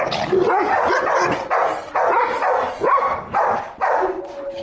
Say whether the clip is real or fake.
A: real